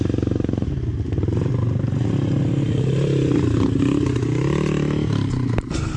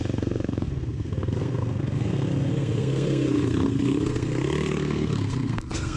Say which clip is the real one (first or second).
first